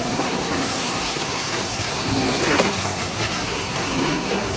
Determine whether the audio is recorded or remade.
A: remade